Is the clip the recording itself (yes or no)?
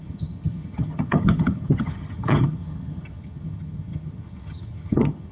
no